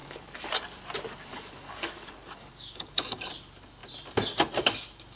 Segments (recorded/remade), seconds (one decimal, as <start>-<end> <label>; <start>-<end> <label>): 0.0-0.5 remade; 0.5-1.3 recorded; 1.3-3.3 remade; 3.3-5.2 recorded